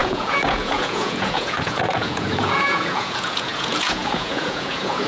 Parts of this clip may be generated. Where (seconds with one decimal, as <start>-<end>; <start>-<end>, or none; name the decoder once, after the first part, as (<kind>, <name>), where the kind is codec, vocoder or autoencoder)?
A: 0.0-5.1 (vocoder, Vocos)